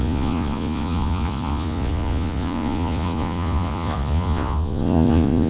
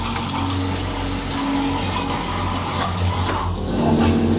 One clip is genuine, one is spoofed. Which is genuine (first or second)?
second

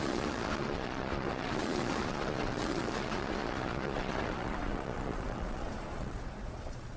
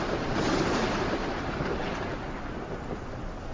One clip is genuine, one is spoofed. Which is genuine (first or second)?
second